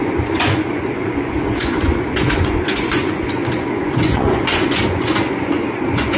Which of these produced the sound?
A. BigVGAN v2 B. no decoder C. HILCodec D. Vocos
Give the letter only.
D